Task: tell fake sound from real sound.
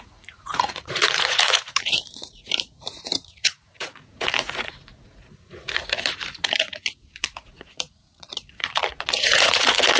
fake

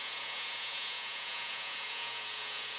fake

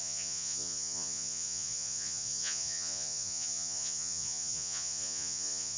fake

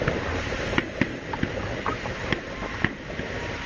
real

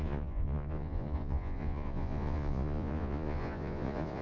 fake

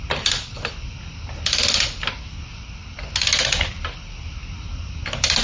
real